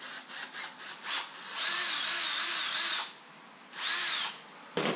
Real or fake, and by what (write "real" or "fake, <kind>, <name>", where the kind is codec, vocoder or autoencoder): fake, vocoder, BigVGAN v2